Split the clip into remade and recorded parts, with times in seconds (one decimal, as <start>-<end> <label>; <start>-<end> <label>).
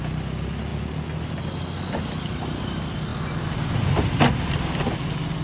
0.0-5.4 recorded